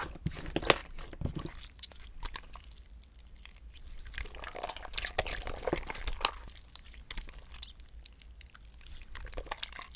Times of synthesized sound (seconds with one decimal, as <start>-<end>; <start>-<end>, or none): none